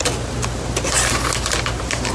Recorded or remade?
recorded